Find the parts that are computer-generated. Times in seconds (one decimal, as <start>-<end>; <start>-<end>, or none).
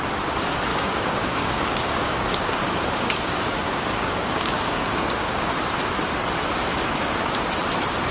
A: 0.7-5.6